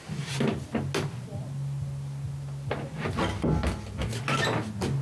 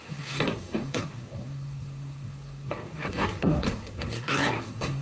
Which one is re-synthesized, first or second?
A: second